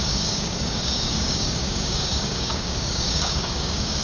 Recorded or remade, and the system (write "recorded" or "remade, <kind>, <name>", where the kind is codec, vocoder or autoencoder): remade, codec, DAC